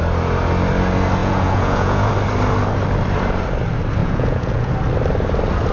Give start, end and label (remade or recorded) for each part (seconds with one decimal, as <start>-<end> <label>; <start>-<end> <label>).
0.0-1.2 recorded; 1.2-2.1 remade; 2.1-4.0 recorded; 4.0-4.7 remade; 4.7-5.7 recorded